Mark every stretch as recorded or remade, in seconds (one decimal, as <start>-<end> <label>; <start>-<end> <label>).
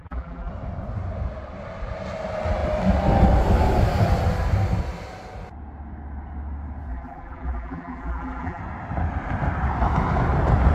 0.0-0.5 remade; 0.5-6.9 recorded; 6.9-8.6 remade; 8.6-10.7 recorded